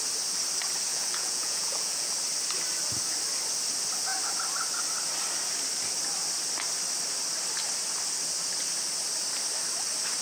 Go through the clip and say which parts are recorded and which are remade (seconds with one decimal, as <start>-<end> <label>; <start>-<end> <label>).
0.0-0.9 recorded; 0.9-2.1 remade; 2.1-10.2 recorded